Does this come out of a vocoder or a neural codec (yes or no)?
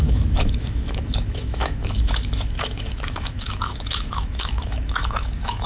yes